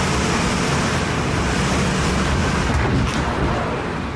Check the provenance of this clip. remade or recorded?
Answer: recorded